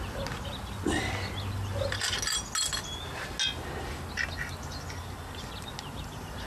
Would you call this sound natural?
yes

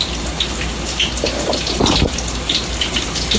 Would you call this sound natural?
yes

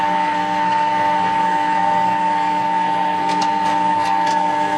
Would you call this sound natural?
no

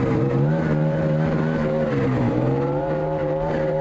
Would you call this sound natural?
no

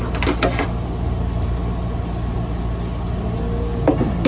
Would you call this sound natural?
yes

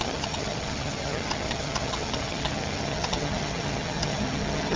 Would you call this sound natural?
no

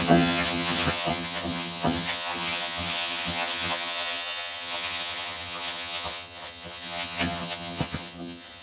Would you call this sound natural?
no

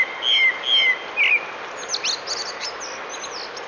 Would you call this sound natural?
yes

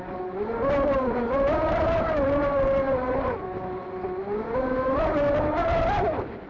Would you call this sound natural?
yes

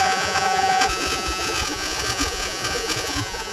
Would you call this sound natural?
no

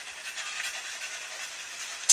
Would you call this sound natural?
yes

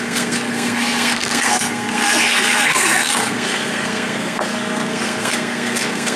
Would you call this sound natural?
no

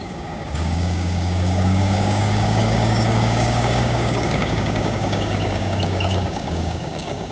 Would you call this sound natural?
no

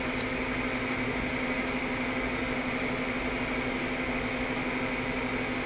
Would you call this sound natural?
yes